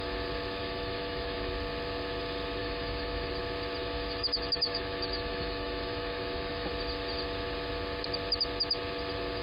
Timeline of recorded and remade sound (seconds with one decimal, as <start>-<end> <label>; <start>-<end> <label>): 0.0-0.6 recorded; 0.6-1.5 remade; 1.5-2.6 recorded; 2.6-3.3 remade; 3.3-3.8 recorded; 3.8-6.7 remade; 6.7-9.4 recorded